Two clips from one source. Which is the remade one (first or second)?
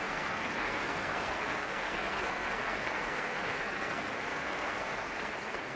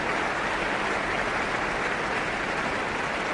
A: first